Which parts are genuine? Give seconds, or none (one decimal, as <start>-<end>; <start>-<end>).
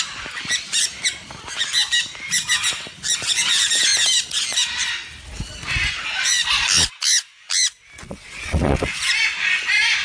0.0-8.0; 9.1-10.0